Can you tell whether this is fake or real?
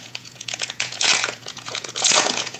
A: fake